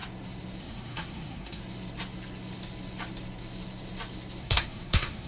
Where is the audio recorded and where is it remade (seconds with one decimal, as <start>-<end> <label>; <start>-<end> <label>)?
0.0-0.6 recorded; 0.6-1.6 remade; 1.6-4.4 recorded; 4.4-5.3 remade